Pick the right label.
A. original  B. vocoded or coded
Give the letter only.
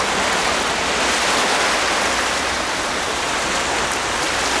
A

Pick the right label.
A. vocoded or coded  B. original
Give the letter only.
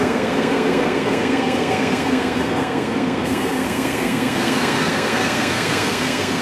A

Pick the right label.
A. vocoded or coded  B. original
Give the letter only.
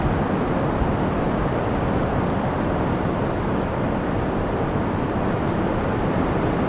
B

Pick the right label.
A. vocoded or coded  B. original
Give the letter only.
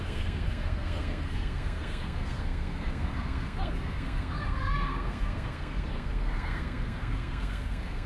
A